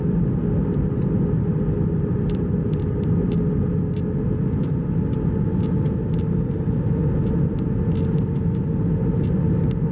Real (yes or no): yes